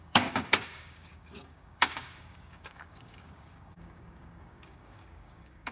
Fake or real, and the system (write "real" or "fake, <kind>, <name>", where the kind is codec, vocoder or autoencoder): fake, codec, DAC